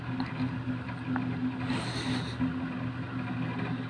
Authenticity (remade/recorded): recorded